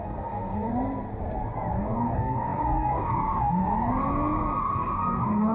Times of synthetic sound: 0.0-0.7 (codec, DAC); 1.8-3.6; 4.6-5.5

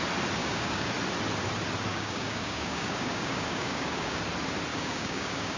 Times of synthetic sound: 0.4-0.9 (codec, DAC); 1.9-4.2; 4.7-5.6

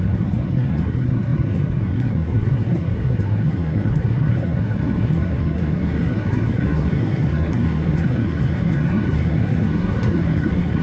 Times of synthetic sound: 0.0-10.8 (codec, SNAC)